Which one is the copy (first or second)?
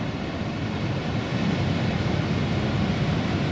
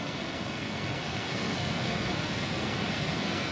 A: second